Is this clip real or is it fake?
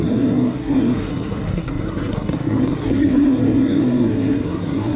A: fake